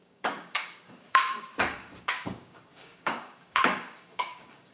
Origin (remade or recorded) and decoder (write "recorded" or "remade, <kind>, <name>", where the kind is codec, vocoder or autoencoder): remade, codec, DAC